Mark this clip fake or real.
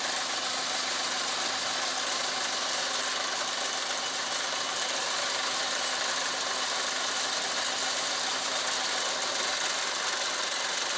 real